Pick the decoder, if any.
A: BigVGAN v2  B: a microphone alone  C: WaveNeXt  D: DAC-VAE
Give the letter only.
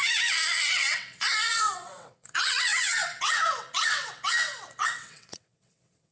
C